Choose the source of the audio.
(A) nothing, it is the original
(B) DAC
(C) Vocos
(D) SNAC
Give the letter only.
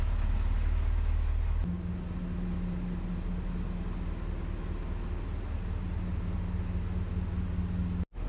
A